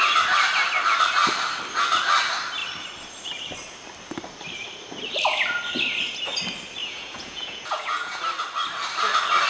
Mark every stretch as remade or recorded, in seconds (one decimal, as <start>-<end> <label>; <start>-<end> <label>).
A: 0.0-6.8 recorded; 6.8-8.2 remade; 8.2-9.5 recorded